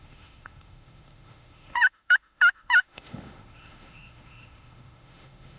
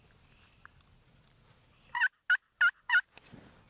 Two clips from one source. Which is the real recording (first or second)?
second